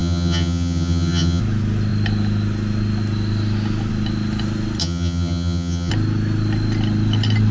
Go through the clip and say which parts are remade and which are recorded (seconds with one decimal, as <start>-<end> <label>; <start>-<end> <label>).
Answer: 0.0-1.4 remade; 1.4-4.8 recorded; 4.8-5.9 remade; 5.9-7.5 recorded